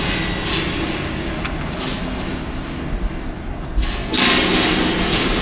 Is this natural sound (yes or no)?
yes